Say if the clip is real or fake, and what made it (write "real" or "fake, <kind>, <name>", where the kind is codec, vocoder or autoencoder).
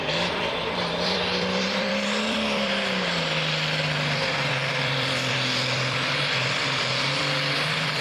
fake, vocoder, BigVGAN v2